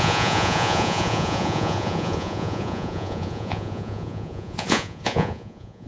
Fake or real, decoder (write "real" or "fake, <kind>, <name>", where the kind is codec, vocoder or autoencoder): fake, vocoder, Vocos